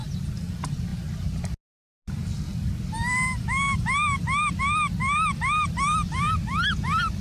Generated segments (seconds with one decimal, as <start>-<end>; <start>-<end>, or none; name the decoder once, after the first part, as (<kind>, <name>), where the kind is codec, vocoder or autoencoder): 0.0-0.5 (vocoder, BigVGAN v2)